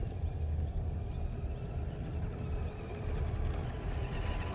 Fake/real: real